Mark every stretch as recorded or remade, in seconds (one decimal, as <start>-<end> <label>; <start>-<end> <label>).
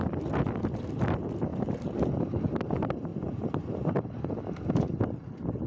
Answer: 0.0-3.1 recorded; 3.1-3.9 remade; 3.9-5.7 recorded